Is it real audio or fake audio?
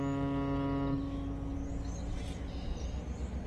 real